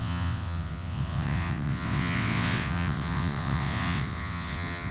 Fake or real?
fake